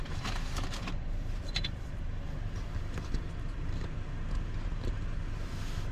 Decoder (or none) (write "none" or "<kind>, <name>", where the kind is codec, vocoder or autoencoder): vocoder, BigVGAN v2